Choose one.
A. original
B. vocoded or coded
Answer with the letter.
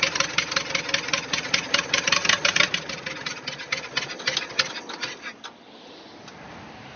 A